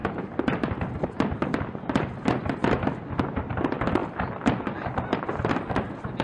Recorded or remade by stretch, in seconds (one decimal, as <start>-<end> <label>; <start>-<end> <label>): 0.0-6.2 recorded